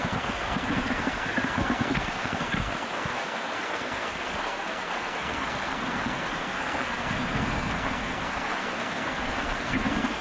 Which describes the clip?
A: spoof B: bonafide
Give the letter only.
A